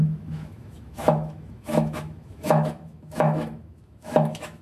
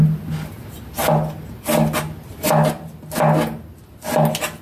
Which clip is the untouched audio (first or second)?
second